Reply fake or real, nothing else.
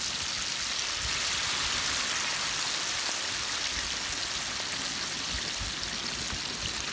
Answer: real